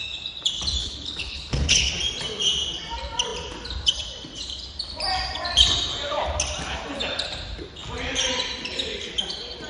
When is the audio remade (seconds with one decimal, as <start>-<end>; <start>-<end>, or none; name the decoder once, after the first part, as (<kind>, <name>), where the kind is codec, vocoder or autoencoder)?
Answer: 0.8-1.9 (codec, HILCodec)